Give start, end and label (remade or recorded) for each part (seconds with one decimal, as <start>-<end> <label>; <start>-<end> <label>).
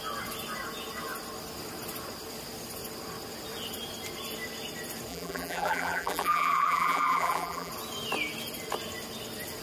0.0-5.1 recorded; 5.1-7.7 remade; 7.7-9.6 recorded